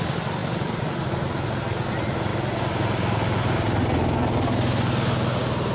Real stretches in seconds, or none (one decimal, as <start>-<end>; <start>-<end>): 0.0-5.7